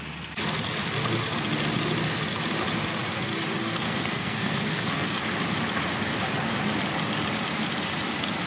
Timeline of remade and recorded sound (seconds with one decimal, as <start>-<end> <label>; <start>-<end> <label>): 0.0-3.6 recorded; 3.6-5.3 remade; 5.3-8.5 recorded

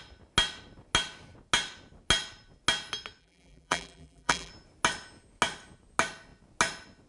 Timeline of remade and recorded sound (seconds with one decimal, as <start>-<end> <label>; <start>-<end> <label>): 0.0-3.2 recorded; 3.2-4.5 remade; 4.5-7.1 recorded

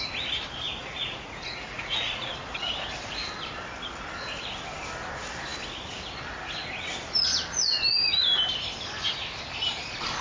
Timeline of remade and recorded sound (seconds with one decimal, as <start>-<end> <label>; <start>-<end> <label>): 0.0-0.8 recorded; 0.8-2.3 remade; 2.3-10.2 recorded

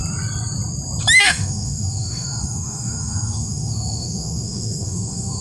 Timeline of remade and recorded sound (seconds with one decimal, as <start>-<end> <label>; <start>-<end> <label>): 0.0-1.2 recorded; 1.2-5.4 remade

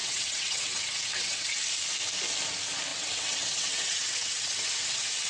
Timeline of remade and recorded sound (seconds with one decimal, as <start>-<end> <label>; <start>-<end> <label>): 0.0-1.6 remade; 1.6-2.9 recorded; 2.9-5.3 remade

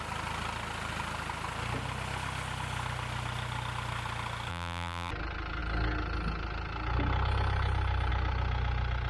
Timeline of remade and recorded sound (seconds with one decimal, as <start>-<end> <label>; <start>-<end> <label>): 0.0-4.5 recorded; 4.5-5.1 remade; 5.1-9.1 recorded

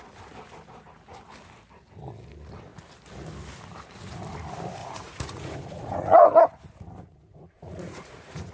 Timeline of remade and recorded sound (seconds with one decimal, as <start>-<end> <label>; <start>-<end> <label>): 0.0-4.8 recorded; 4.8-6.4 remade; 6.4-7.1 recorded; 7.1-8.5 remade

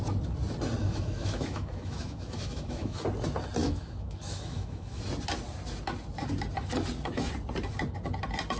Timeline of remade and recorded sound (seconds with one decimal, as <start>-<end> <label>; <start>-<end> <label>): 0.0-0.8 recorded; 0.8-3.0 remade; 3.0-3.6 recorded; 3.6-5.0 remade; 5.0-8.6 recorded